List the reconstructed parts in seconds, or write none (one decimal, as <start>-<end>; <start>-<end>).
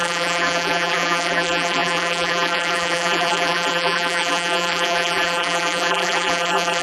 0.0-6.8